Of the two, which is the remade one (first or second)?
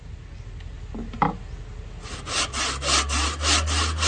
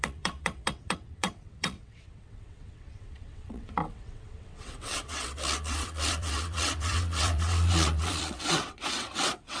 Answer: second